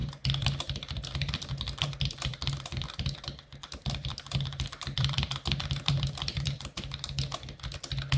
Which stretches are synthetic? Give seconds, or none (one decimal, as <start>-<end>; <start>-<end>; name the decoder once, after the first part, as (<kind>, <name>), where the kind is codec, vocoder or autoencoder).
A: 0.0-8.2 (vocoder, BigVGAN v2)

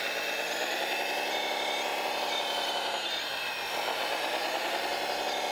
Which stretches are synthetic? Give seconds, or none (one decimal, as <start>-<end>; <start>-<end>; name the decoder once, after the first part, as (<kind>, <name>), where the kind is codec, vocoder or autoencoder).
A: 1.9-3.2 (vocoder, BigVGAN v2)

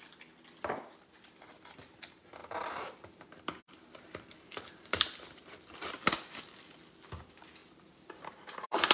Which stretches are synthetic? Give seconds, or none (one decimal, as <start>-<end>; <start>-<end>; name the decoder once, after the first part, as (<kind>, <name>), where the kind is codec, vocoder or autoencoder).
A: 2.4-5.9 (vocoder, BigVGAN v2); 7.6-8.3

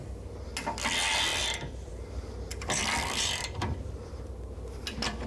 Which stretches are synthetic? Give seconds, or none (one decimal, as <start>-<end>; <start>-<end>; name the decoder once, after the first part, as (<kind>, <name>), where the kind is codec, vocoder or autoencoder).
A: 1.3-1.9 (vocoder, BigVGAN v2); 2.5-4.1

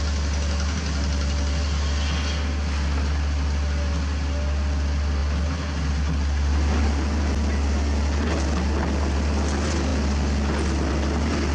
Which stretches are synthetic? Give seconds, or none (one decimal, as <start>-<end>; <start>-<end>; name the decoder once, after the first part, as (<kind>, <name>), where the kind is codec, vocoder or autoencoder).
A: none

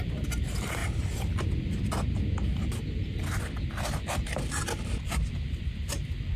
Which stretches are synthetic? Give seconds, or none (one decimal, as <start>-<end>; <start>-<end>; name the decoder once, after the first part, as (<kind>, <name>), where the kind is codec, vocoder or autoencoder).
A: none

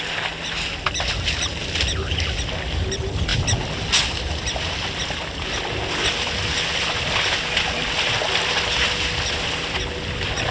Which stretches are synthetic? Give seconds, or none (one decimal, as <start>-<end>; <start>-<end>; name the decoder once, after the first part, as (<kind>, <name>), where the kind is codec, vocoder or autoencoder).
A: none